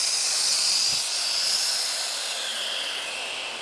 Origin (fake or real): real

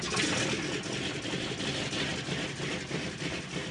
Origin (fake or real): real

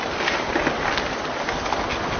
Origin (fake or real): real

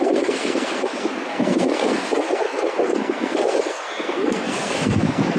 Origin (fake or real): fake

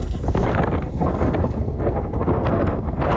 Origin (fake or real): fake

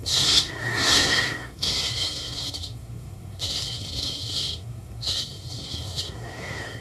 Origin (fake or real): fake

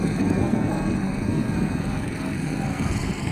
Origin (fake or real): fake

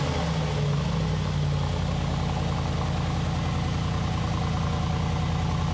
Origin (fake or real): real